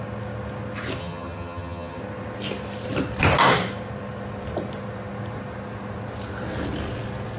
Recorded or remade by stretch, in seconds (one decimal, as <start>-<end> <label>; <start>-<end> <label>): 0.0-1.0 recorded; 1.0-2.0 remade; 2.0-7.4 recorded